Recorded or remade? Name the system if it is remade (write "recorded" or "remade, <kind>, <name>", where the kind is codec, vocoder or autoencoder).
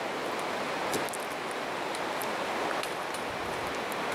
recorded